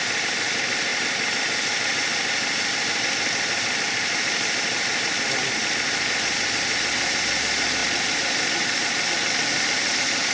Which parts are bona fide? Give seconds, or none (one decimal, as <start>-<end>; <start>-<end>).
0.0-10.3